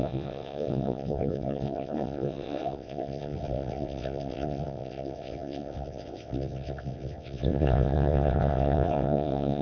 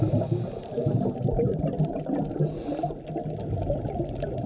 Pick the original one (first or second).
second